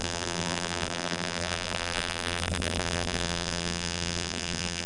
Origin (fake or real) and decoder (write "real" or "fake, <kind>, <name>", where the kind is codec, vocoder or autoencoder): fake, vocoder, BigVGAN v2